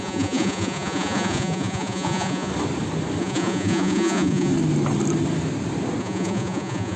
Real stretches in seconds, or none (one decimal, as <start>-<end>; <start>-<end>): 2.5-3.2; 4.5-6.0